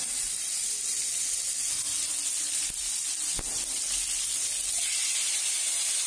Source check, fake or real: real